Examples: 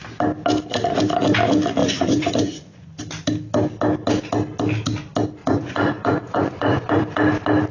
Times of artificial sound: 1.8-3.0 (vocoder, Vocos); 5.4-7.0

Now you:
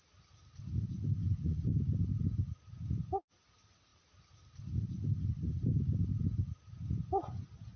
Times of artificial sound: 1.2-1.7 (vocoder, Vocos)